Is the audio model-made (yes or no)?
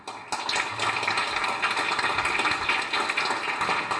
no